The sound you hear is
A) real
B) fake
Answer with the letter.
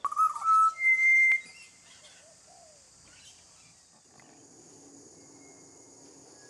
A